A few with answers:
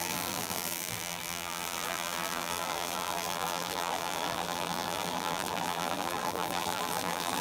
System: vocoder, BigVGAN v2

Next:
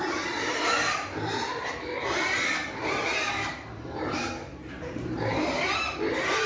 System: vocoder, BigVGAN v2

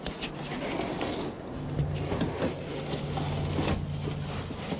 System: none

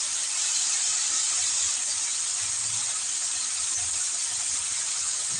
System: none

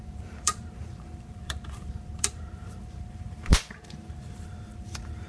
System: vocoder, BigVGAN v2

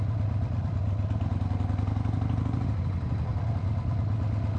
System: vocoder, BigVGAN v2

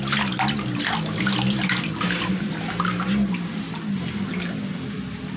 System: none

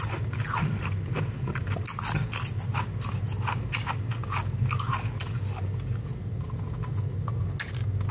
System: none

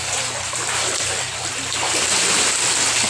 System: none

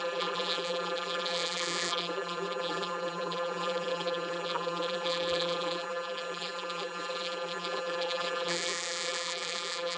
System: vocoder, BigVGAN v2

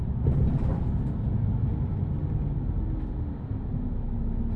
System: none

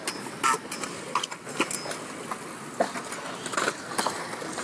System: none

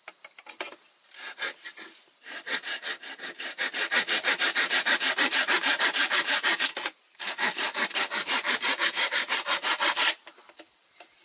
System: vocoder, BigVGAN v2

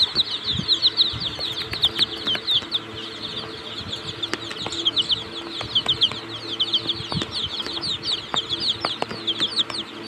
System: none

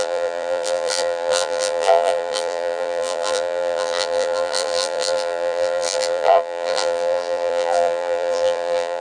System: vocoder, BigVGAN v2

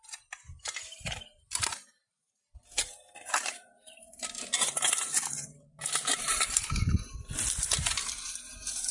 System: vocoder, BigVGAN v2